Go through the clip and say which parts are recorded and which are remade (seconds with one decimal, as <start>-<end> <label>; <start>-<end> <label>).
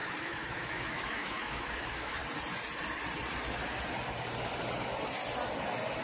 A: 0.0-2.2 remade; 2.2-6.0 recorded